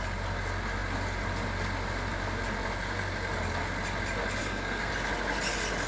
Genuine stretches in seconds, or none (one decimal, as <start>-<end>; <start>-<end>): 0.0-4.4; 4.9-5.9